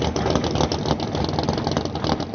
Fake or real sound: real